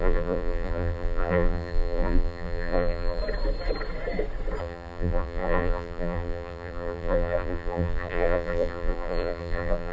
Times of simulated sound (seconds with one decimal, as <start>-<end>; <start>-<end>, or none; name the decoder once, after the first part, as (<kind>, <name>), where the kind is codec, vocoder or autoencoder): 0.0-3.2 (vocoder, BigVGAN v2); 4.6-9.9